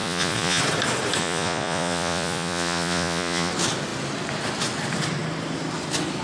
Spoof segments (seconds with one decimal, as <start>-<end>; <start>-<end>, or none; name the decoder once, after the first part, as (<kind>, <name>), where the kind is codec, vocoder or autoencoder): 0.0-0.6 (vocoder, Vocos); 1.2-3.5